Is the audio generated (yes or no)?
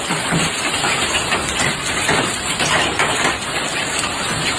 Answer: no